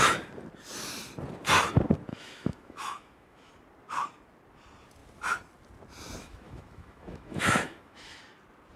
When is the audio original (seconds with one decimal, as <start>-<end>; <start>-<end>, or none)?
0.0-2.1; 3.5-6.2; 8.2-8.8